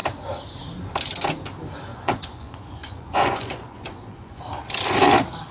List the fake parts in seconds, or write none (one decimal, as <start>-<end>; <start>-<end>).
1.9-4.4